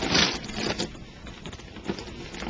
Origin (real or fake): real